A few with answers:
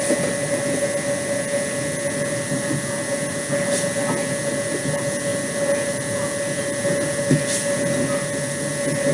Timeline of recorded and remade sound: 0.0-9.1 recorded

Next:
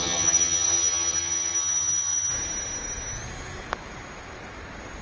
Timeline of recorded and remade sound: 0.0-2.3 remade; 2.3-5.0 recorded